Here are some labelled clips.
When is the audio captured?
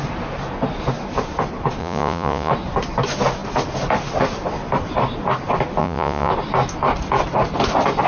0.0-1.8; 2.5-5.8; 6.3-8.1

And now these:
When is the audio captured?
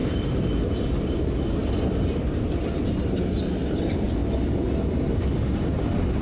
0.0-6.2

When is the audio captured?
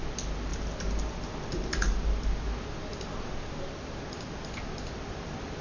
0.0-5.6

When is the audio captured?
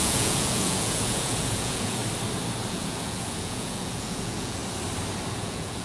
2.0-2.7; 4.6-5.3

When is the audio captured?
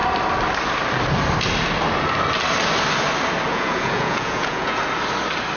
0.0-3.5; 4.8-5.6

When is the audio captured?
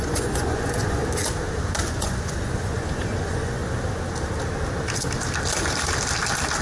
1.0-1.9; 3.6-6.6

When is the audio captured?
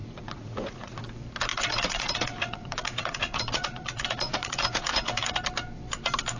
1.0-1.5; 5.3-6.4